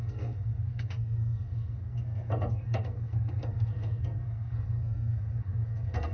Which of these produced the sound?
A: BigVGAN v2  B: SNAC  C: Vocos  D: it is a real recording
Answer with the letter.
B